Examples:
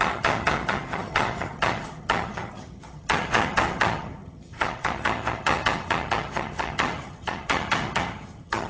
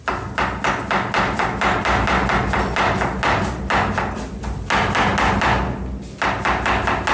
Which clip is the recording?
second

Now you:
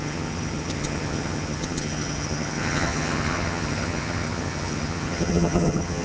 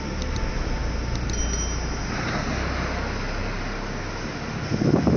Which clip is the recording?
second